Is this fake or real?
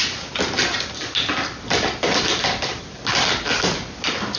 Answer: real